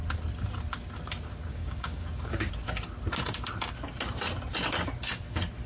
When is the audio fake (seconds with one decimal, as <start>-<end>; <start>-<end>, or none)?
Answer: 1.5-2.5